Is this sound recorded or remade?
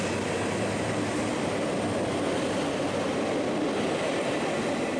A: recorded